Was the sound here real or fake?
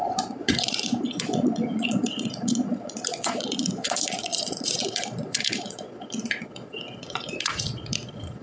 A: fake